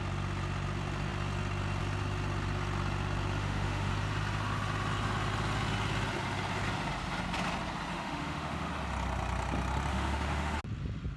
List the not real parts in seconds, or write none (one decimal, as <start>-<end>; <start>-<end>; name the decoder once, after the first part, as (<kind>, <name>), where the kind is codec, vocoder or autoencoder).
3.4-3.9 (autoencoder, DAC-VAE); 7.9-8.7; 9.9-10.6